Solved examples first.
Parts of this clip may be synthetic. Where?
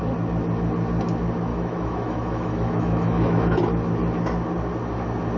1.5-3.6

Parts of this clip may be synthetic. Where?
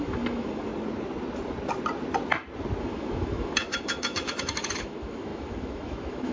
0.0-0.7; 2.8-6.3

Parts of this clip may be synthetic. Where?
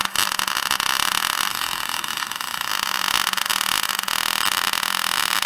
1.5-2.7